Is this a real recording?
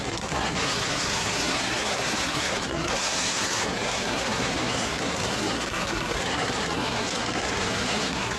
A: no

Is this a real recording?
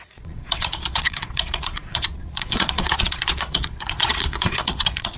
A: no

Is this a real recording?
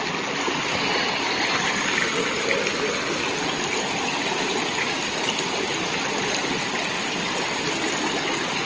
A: yes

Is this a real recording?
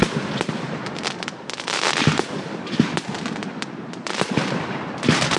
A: no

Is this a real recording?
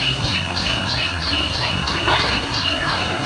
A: no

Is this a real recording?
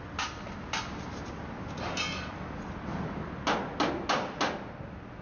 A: yes